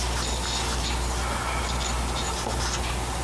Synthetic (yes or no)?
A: no